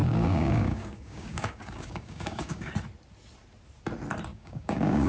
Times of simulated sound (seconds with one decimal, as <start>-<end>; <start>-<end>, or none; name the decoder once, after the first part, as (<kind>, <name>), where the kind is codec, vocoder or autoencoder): 0.0-2.7 (codec, DAC); 4.3-5.1